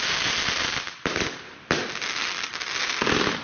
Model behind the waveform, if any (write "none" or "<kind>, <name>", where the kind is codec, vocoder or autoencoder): none